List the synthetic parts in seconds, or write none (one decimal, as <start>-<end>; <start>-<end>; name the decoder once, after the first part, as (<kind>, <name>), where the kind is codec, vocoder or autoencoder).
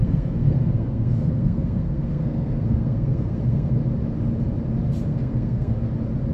0.0-3.8 (codec, SNAC); 5.1-5.8